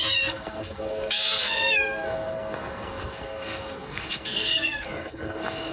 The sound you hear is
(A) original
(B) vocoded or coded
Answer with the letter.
B